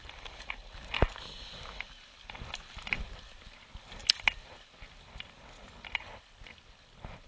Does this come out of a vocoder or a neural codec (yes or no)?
no